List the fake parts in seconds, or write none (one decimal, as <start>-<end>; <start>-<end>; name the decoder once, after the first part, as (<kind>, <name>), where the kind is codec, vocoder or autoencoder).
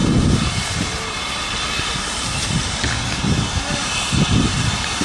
none